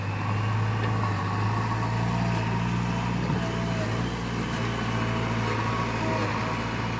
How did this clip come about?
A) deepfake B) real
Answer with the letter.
B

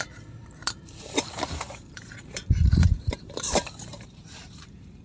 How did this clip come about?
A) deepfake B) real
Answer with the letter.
A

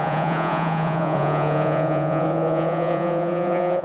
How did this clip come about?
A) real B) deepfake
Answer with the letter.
B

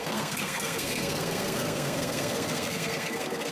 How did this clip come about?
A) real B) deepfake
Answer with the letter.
B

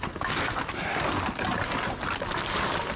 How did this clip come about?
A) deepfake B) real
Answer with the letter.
B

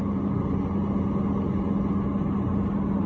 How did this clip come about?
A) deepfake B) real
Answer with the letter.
B